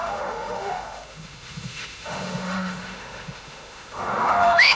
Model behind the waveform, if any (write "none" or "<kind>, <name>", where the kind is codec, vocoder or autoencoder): autoencoder, DAC-VAE